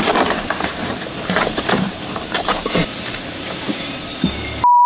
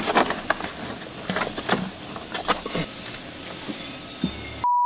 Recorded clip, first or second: second